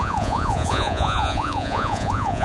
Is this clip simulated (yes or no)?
yes